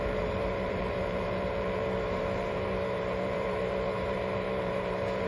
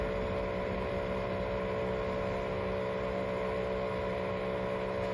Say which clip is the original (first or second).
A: second